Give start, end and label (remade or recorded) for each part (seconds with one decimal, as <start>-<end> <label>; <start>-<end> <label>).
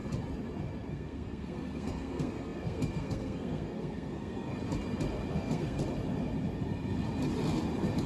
0.0-0.9 recorded; 0.9-4.5 remade; 4.5-5.3 recorded; 5.3-5.8 remade; 5.8-8.1 recorded